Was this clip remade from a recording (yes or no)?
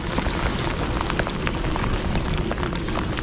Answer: no